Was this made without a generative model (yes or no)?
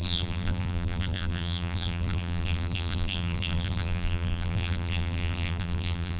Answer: no